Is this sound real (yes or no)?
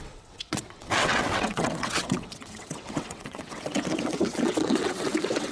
no